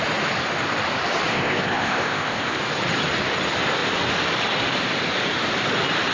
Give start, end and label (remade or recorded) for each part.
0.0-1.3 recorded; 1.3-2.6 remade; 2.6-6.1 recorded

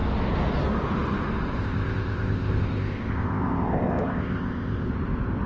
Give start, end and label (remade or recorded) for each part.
0.0-1.6 recorded; 1.6-4.9 remade; 4.9-5.5 recorded

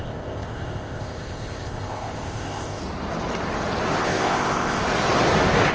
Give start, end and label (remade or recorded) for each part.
0.0-2.8 remade; 2.8-4.0 recorded; 4.0-4.8 remade; 4.8-5.7 recorded

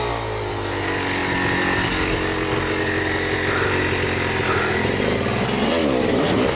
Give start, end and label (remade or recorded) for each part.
0.0-6.5 recorded